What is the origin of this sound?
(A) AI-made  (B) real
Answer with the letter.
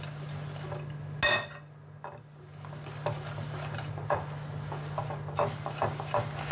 B